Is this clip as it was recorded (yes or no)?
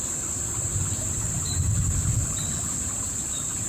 no